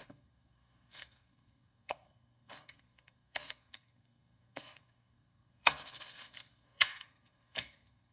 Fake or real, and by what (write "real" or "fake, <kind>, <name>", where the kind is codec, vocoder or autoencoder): fake, codec, SNAC